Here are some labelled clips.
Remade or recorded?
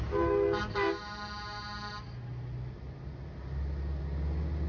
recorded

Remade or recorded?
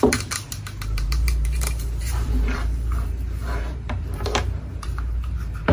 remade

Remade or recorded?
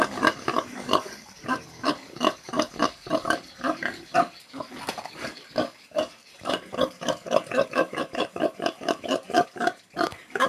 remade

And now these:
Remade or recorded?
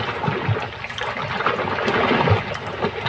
recorded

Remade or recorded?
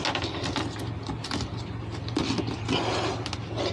recorded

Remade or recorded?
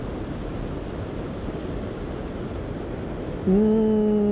recorded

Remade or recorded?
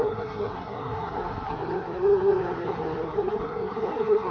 remade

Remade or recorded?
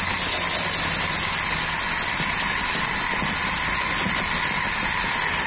recorded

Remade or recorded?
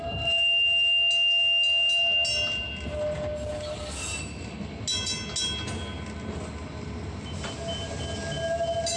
recorded